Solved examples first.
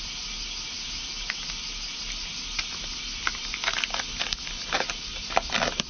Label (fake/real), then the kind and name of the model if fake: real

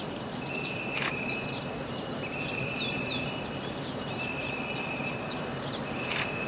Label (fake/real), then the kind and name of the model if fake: fake, vocoder, BigVGAN v2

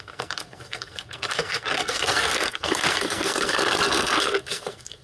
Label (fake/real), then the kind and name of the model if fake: fake, codec, SNAC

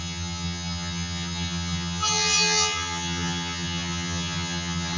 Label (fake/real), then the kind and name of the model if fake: fake, vocoder, HiFi-GAN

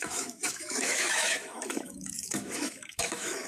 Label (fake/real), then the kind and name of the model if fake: fake, autoencoder, DAC-VAE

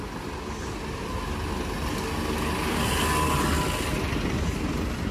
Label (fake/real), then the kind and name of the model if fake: real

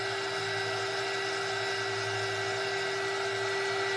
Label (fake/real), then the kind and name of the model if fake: real